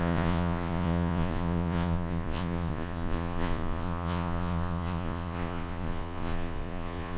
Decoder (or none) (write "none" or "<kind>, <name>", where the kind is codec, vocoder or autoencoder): vocoder, Vocos